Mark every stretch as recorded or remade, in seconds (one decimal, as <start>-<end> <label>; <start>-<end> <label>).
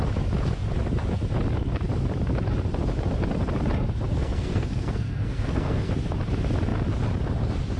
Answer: 0.0-4.2 recorded; 4.2-5.9 remade; 5.9-7.8 recorded